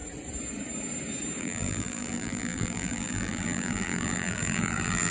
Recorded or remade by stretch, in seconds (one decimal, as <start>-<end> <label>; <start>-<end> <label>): 0.0-1.4 recorded; 1.4-5.1 remade